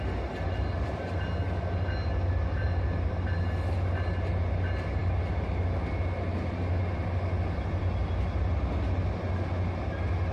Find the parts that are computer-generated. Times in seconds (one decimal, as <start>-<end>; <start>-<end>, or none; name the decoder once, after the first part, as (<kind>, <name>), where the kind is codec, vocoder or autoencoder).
2.6-3.4 (vocoder, BigVGAN v2)